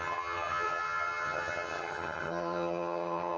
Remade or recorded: remade